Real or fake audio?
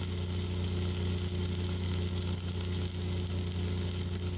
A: real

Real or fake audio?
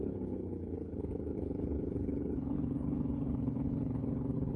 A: fake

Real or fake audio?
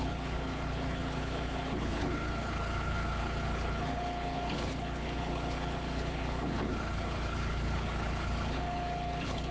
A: fake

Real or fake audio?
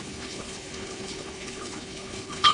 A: fake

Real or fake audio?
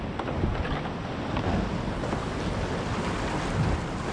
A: real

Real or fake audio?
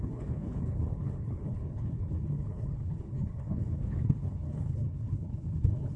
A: fake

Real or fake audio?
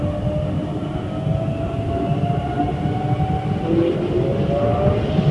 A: real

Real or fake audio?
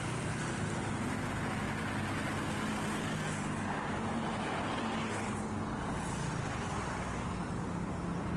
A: real